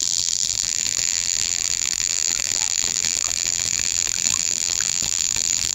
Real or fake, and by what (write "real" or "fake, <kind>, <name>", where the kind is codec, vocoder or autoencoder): fake, vocoder, BigVGAN v2